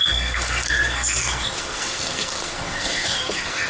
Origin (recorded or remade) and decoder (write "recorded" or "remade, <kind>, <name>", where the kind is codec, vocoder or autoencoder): remade, codec, SNAC